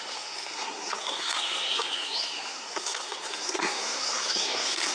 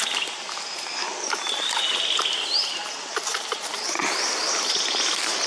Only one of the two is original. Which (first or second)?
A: second